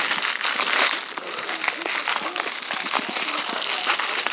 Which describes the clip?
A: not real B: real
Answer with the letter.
B